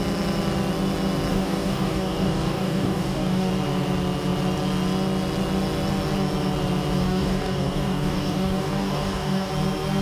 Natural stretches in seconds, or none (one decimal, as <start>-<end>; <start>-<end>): 0.0-1.3; 3.5-7.0; 9.5-10.0